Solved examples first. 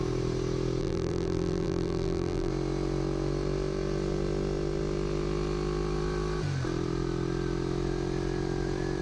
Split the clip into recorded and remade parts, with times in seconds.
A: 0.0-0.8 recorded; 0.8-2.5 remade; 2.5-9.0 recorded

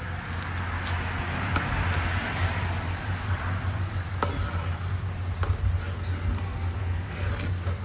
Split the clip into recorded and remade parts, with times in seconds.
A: 0.0-6.8 recorded; 6.8-7.3 remade; 7.3-7.8 recorded